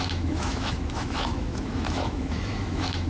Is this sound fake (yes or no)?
yes